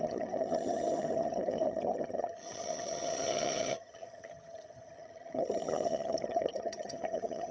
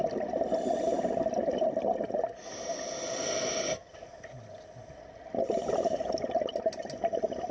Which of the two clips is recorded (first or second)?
second